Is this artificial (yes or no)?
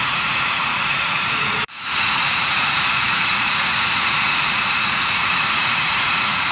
yes